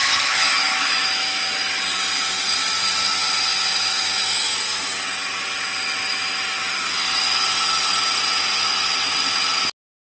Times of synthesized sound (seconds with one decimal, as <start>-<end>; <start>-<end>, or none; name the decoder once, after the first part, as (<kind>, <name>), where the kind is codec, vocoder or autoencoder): 0.0-1.5 (autoencoder, DAC-VAE); 3.5-4.8